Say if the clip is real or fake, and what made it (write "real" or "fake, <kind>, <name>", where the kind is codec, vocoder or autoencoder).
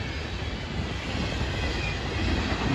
real